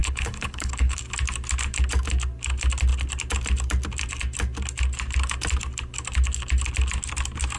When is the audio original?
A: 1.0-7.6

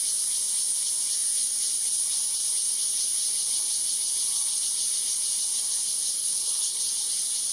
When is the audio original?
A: 0.0-6.2; 6.8-7.5

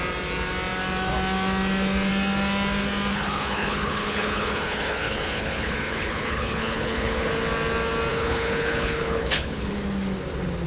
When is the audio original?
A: 0.0-3.1; 7.3-8.1; 9.7-10.7

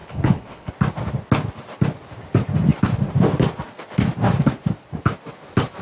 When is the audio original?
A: 0.7-5.8

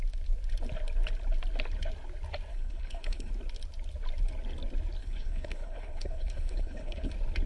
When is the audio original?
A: 0.0-2.5; 3.3-5.0; 7.1-7.5

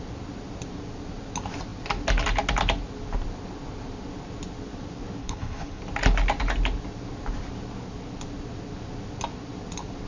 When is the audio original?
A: 0.0-5.2; 5.8-10.1

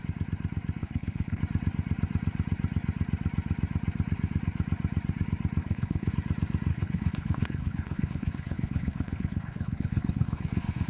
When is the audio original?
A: 0.0-0.8; 1.4-5.6; 6.1-6.7

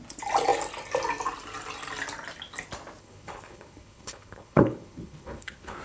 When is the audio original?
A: 0.0-3.0